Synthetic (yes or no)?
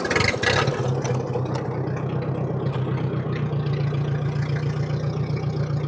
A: no